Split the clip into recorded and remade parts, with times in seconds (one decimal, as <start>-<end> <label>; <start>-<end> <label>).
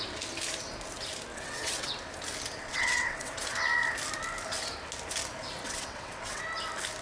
0.0-1.3 recorded; 1.3-1.9 remade; 1.9-2.6 recorded; 2.6-3.3 remade; 3.3-5.6 recorded; 5.6-6.4 remade; 6.4-7.0 recorded